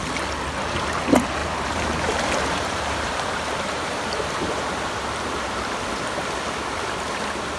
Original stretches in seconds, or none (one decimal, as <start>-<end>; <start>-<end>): 0.0-1.4; 5.7-7.6